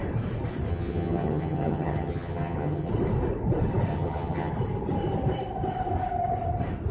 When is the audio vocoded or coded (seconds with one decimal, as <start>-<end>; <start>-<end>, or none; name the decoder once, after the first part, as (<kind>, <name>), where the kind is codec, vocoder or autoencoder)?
0.7-2.9 (vocoder, HiFi-GAN); 3.9-4.5